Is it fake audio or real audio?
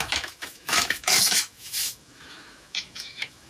fake